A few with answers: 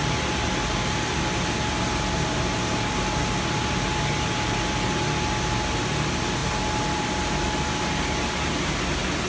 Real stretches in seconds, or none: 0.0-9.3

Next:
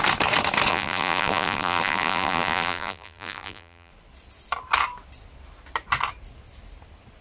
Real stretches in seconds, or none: 0.0-0.7; 3.9-7.2

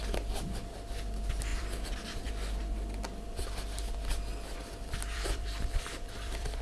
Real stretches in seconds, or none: 0.0-1.5; 2.3-4.3